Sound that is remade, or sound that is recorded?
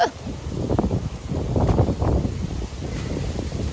remade